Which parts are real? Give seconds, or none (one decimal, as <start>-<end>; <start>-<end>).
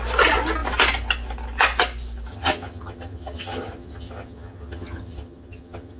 0.0-2.3